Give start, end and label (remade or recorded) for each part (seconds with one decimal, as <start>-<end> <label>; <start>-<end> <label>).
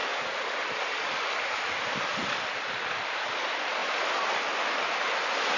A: 0.0-0.8 recorded; 0.8-3.8 remade; 3.8-4.7 recorded; 4.7-5.6 remade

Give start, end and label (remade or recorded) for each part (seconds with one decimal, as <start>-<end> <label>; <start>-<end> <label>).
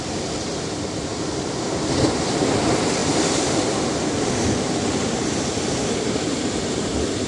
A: 0.0-7.3 remade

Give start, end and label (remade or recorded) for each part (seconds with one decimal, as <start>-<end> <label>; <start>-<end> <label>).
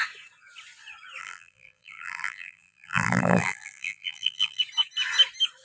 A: 0.0-1.2 recorded; 1.2-4.6 remade; 4.6-5.6 recorded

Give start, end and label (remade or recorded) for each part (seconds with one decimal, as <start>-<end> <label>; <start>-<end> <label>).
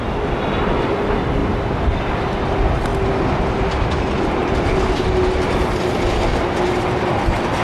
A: 0.0-1.4 recorded; 1.4-2.1 remade; 2.1-4.4 recorded; 4.4-5.0 remade; 5.0-6.3 recorded; 6.3-7.1 remade; 7.1-7.6 recorded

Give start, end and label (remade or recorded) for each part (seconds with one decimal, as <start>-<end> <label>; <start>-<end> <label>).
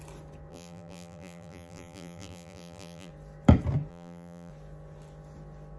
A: 0.0-0.5 recorded; 0.5-3.1 remade; 3.1-3.9 recorded; 3.9-4.5 remade; 4.5-5.8 recorded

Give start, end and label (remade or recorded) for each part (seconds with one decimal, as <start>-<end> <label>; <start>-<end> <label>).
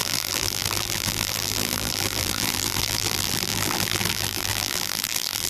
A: 0.0-5.5 remade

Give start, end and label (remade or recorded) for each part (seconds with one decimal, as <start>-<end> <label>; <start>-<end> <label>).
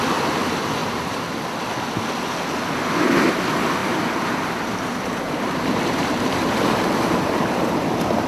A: 0.0-0.8 recorded; 0.8-1.3 remade; 1.3-3.8 recorded; 3.8-7.9 remade; 7.9-8.3 recorded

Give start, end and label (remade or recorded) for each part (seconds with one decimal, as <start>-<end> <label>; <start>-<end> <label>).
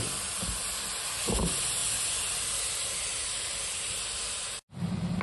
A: 0.0-5.2 recorded